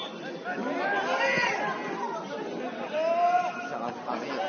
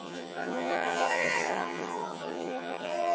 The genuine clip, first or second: first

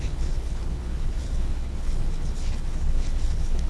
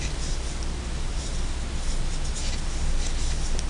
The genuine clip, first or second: second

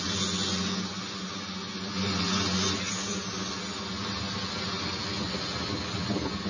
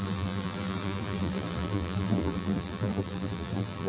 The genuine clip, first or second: first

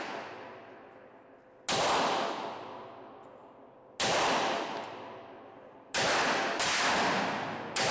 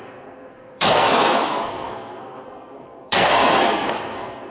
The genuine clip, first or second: first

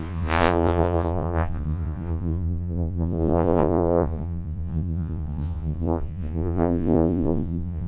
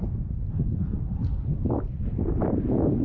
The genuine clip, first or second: second